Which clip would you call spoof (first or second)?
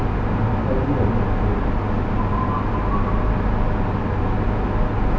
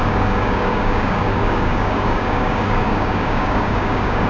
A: second